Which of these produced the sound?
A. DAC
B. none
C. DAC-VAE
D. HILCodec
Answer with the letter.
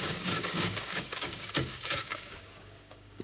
A